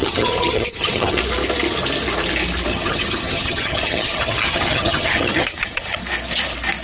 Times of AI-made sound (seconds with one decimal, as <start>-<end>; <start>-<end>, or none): 0.0-1.2; 2.7-6.0